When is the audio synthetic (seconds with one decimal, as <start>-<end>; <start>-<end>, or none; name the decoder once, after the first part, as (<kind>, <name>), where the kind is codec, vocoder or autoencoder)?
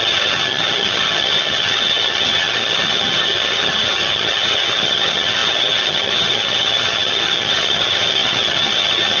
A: 0.0-9.2 (vocoder, HiFi-GAN)